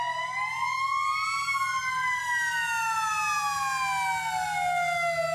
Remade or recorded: recorded